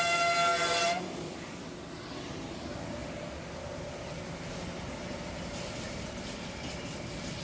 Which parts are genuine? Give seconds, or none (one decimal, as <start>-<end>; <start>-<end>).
0.0-7.4